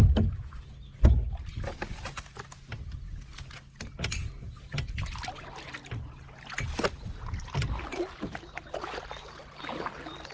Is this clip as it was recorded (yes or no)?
yes